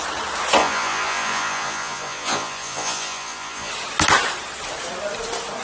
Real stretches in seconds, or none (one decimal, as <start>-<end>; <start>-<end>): 0.0-0.6; 3.7-5.6